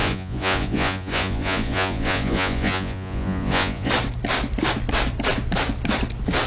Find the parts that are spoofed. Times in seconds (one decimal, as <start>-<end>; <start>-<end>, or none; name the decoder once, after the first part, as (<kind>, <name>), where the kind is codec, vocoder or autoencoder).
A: 0.0-3.9 (vocoder, Vocos)